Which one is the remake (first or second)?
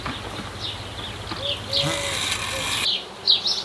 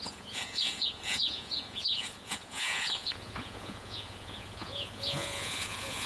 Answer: second